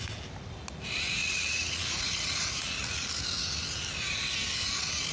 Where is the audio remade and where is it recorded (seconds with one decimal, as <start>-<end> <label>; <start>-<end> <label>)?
0.0-1.2 recorded; 1.2-3.1 remade; 3.1-5.1 recorded